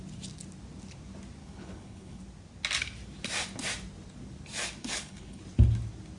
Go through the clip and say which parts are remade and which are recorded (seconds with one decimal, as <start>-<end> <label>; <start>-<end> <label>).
0.0-1.4 recorded; 1.4-2.2 remade; 2.2-4.8 recorded; 4.8-5.4 remade; 5.4-6.2 recorded